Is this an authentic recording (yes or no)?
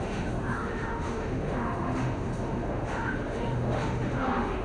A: no